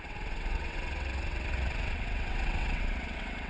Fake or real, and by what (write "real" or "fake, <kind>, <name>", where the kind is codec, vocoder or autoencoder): fake, vocoder, WaveNeXt